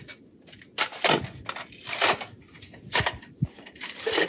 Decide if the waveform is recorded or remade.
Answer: recorded